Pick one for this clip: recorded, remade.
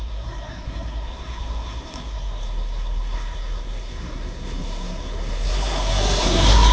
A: remade